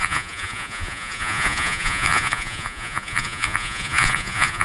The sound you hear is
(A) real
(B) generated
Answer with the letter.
B